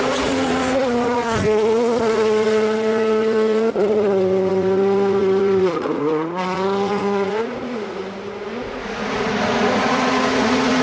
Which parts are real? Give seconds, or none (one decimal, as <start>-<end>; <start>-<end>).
8.0-8.7